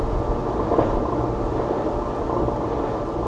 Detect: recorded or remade recorded